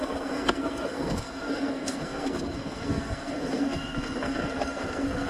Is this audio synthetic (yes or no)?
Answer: yes